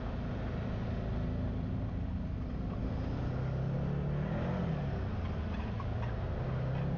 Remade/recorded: recorded